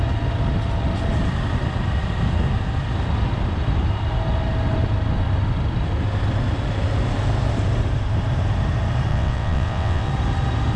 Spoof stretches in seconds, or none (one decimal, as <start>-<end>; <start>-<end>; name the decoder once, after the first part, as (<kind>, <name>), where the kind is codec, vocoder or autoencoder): 9.1-10.1 (vocoder, WaveNeXt)